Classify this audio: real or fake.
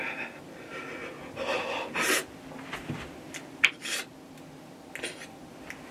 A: real